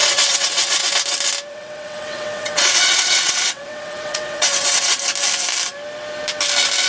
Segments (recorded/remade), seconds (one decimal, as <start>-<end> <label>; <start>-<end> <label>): 0.0-0.9 remade; 0.9-1.5 recorded; 1.5-5.0 remade; 5.0-6.9 recorded